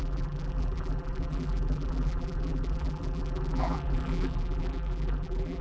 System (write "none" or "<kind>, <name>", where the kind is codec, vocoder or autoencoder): vocoder, BigVGAN v2